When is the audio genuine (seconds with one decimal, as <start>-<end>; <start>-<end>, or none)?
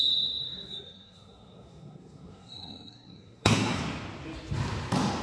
0.0-0.7; 3.8-5.2